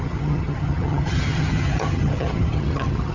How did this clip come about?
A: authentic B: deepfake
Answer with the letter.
B